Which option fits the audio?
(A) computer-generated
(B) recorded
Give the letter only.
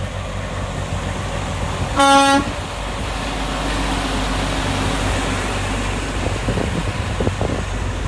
B